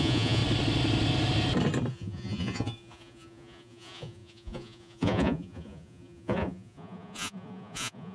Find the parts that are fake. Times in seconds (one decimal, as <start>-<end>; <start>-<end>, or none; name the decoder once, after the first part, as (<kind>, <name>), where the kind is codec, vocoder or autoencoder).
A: 0.0-0.4 (vocoder, Vocos); 1.9-8.1